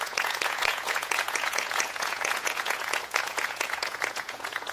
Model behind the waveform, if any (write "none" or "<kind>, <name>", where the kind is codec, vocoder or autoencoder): vocoder, Vocos